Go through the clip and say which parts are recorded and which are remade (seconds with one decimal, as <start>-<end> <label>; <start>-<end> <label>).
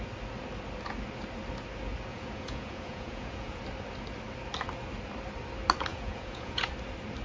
0.0-2.1 recorded; 2.1-3.6 remade; 3.6-5.9 recorded; 5.9-6.7 remade; 6.7-7.2 recorded